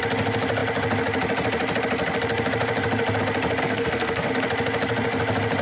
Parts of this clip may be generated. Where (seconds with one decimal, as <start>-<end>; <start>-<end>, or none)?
3.6-4.3